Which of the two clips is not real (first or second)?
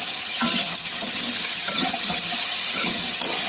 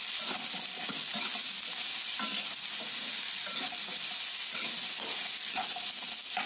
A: first